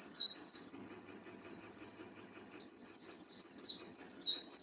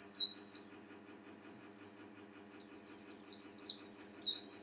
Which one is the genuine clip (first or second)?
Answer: second